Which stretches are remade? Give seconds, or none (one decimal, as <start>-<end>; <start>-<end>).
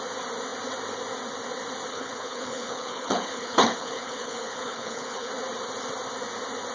1.9-5.3